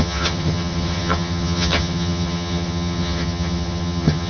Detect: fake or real fake